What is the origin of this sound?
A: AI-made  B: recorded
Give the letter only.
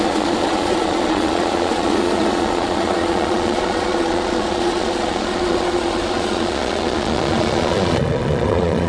A